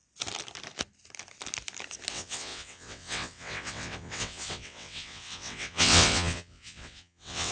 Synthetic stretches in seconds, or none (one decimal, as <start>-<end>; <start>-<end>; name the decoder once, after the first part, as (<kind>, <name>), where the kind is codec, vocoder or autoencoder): 2.1-7.5 (vocoder, WaveNeXt)